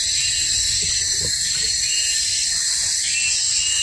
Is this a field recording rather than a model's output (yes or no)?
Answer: yes